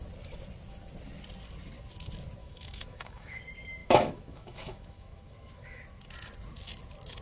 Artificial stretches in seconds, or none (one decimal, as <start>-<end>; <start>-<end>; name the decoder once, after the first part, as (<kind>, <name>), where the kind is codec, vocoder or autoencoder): 2.4-3.4 (autoencoder, DAC-VAE); 3.8-5.8